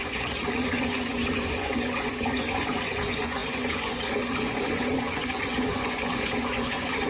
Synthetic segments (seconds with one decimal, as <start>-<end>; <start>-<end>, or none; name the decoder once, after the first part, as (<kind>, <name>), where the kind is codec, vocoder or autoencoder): 0.0-7.1 (vocoder, Vocos)

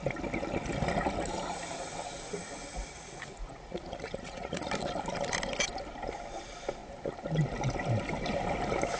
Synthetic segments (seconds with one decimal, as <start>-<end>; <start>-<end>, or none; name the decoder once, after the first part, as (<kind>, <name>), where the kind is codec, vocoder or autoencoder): 2.6-4.7 (vocoder, Vocos)